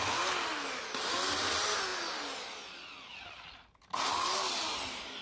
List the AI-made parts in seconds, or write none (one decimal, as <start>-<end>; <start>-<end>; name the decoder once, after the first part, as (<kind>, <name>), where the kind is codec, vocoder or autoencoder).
none